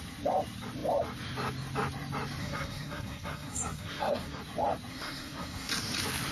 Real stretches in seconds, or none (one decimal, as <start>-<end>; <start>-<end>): 0.0-2.4; 4.4-4.9; 5.7-6.3